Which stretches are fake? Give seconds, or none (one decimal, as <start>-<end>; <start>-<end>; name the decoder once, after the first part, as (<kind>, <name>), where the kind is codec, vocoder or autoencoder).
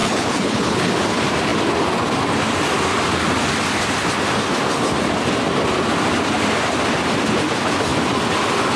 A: 0.0-0.9 (codec, HILCodec)